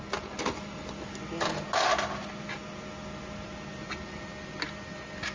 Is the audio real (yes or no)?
yes